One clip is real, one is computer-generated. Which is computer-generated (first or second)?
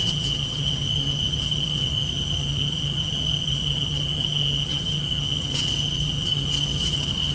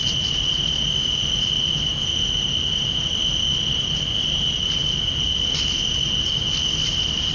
first